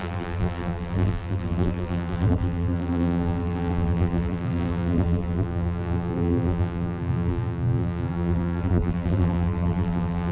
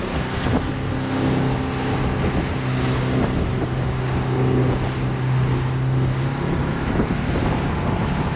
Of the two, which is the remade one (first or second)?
first